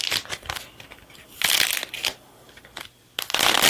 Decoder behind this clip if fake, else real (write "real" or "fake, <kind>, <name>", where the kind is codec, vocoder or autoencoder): real